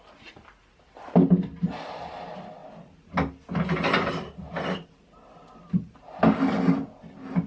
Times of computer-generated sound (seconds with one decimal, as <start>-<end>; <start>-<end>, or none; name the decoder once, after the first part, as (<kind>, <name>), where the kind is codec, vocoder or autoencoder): none

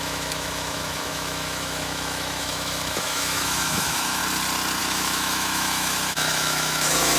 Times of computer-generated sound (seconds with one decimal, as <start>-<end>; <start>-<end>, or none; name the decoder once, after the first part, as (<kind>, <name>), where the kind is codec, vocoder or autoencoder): 0.0-4.2 (autoencoder, DAC-VAE); 4.8-7.2

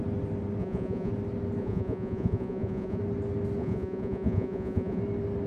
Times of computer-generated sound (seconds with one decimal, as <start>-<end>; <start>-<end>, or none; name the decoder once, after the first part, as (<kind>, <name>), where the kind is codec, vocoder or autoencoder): 0.6-1.1 (vocoder, Vocos); 1.6-3.0; 3.6-5.0

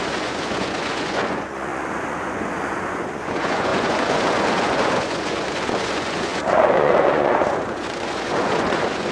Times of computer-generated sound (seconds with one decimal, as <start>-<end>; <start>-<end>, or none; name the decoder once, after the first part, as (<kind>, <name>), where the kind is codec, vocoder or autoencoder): 0.0-9.1 (vocoder, Vocos)

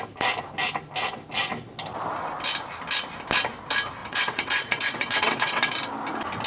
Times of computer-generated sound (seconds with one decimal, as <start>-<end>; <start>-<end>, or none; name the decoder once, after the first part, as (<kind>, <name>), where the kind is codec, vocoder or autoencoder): 4.0-5.7 (vocoder, WaveNeXt)